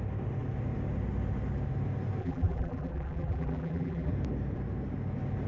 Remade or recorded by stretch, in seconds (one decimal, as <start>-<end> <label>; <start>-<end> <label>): 0.0-2.2 recorded; 2.2-4.1 remade; 4.1-5.5 recorded